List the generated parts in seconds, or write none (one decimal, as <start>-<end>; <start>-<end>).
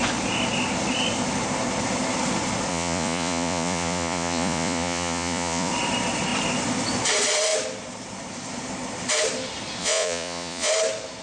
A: 2.7-5.7; 9.8-10.7